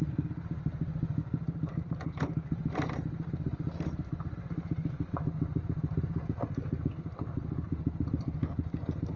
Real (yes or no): yes